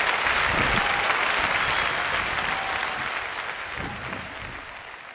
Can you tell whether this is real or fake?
real